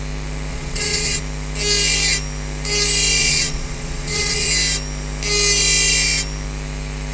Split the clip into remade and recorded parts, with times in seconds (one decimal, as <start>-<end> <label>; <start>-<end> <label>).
0.0-0.5 recorded; 0.5-1.2 remade; 1.2-3.2 recorded; 3.2-4.5 remade; 4.5-7.1 recorded